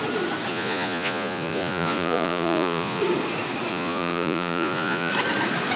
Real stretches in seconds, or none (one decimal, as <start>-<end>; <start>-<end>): 0.0-0.5; 3.0-3.7; 5.1-5.8

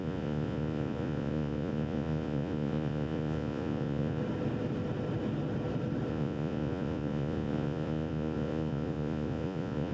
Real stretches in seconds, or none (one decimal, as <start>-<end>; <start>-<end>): 4.2-6.1